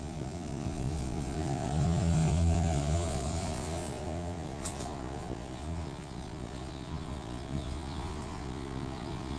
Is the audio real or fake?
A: fake